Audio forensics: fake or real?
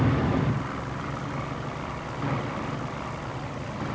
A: real